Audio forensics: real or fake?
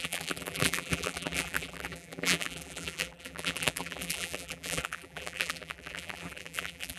fake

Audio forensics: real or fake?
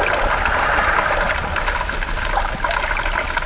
real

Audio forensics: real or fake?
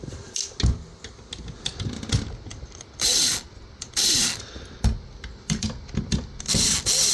real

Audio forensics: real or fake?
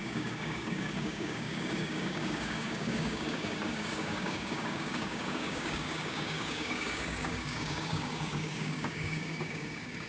fake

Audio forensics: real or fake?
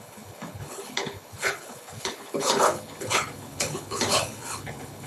fake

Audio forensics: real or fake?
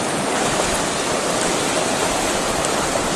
real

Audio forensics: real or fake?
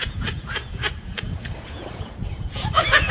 fake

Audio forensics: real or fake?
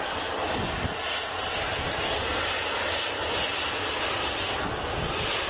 real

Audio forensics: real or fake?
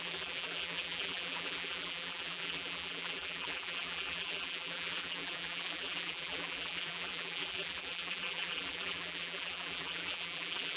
fake